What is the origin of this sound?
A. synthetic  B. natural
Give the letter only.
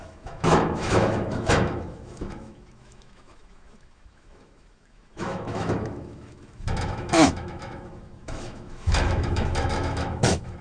A